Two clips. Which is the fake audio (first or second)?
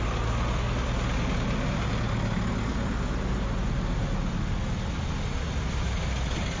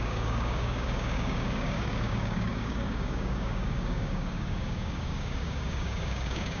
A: second